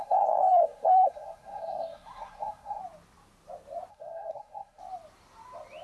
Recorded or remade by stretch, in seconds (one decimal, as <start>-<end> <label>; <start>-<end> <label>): 0.0-2.8 remade; 2.8-3.9 recorded; 3.9-4.8 remade; 4.8-5.8 recorded